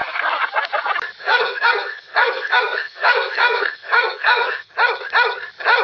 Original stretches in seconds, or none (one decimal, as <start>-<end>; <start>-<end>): 0.0-1.2; 4.7-5.8